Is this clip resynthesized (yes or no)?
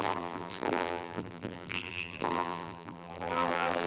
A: yes